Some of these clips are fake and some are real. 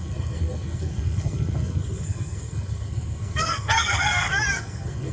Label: fake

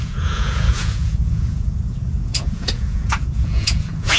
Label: fake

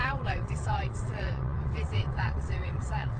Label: fake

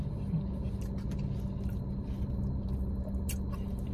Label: real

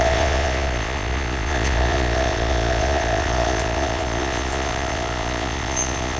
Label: fake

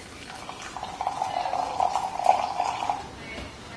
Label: real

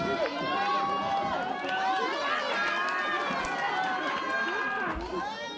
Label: real